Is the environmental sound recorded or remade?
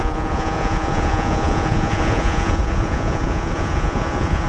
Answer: remade